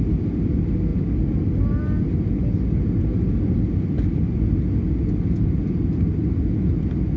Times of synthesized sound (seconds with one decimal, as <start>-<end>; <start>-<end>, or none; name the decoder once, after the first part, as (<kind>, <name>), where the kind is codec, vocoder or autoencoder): none